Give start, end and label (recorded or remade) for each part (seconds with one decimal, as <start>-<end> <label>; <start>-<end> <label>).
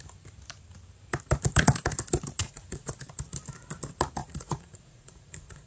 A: 0.0-2.4 recorded; 2.4-2.9 remade; 2.9-4.2 recorded; 4.2-5.7 remade